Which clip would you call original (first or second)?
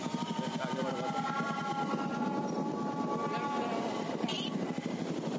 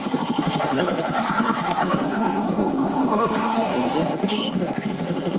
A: first